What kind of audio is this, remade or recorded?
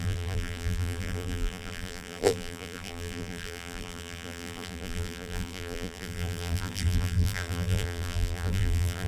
remade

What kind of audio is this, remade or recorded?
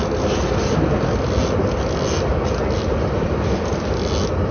recorded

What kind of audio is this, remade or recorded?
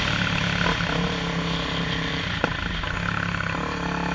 recorded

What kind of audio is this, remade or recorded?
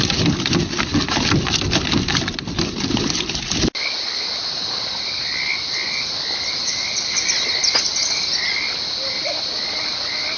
recorded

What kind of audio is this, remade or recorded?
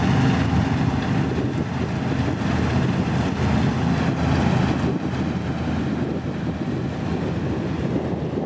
recorded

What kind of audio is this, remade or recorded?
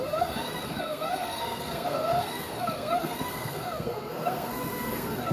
remade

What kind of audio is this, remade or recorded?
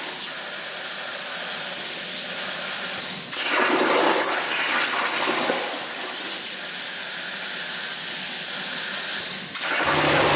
recorded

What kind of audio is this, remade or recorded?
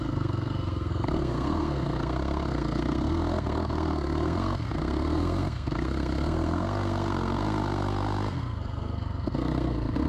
remade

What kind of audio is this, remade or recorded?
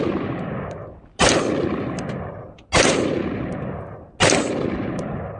recorded